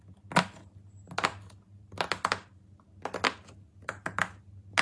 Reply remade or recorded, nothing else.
recorded